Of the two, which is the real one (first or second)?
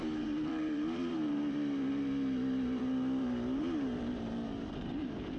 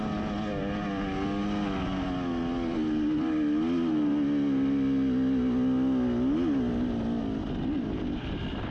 second